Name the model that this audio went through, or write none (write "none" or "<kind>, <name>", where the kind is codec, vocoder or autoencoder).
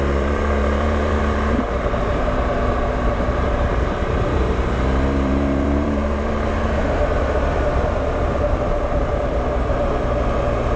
vocoder, BigVGAN v2